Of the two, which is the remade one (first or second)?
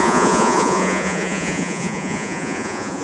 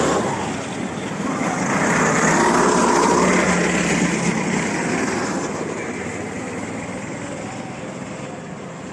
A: first